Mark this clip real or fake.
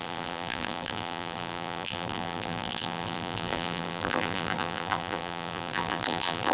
fake